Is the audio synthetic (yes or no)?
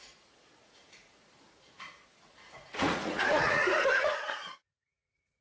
yes